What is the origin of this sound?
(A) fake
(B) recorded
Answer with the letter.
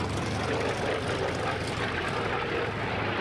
B